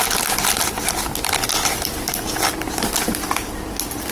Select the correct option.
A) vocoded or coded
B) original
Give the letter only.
B